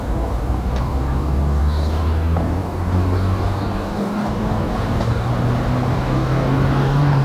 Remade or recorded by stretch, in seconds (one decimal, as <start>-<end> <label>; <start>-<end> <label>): 0.0-5.3 remade; 5.3-5.9 recorded; 5.9-7.2 remade